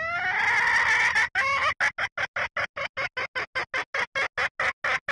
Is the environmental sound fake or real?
real